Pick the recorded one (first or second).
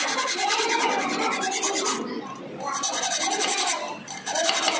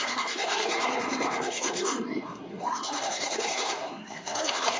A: first